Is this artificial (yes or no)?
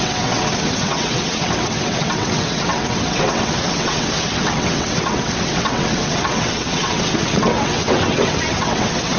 yes